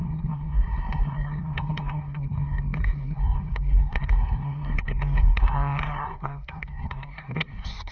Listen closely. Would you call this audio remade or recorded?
remade